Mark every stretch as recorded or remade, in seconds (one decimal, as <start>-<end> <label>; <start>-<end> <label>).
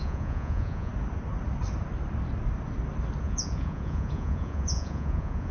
0.0-0.9 remade; 0.9-3.2 recorded; 3.2-5.5 remade